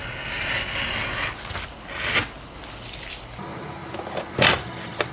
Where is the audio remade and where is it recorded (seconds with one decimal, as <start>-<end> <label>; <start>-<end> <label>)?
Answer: 0.0-5.1 recorded